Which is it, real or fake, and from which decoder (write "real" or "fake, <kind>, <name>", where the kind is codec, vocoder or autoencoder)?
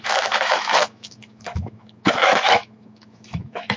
fake, autoencoder, DAC-VAE